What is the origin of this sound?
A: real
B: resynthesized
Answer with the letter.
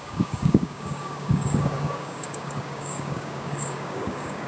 B